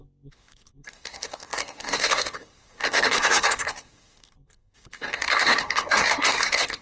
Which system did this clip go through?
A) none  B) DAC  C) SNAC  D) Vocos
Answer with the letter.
C